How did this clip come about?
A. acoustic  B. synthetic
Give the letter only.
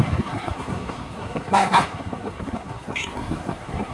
B